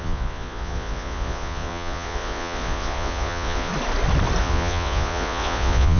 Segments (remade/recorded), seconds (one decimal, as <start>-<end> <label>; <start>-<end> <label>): 0.0-3.7 remade; 3.7-4.4 recorded; 4.4-6.0 remade